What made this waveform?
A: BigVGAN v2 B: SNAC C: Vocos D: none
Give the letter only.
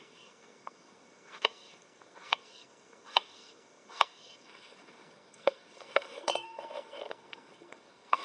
B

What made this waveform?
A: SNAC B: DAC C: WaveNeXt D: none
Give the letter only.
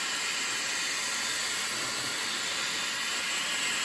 D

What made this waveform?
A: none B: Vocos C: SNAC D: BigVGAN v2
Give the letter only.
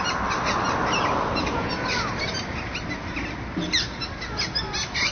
A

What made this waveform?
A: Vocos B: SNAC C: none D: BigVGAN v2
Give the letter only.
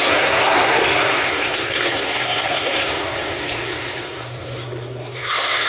B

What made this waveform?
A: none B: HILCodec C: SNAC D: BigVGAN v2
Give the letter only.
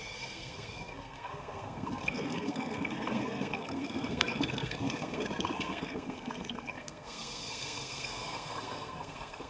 C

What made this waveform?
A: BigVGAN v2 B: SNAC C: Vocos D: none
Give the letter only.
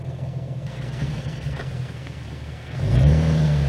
B